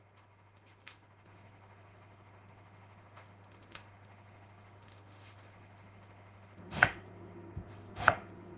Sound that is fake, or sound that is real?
fake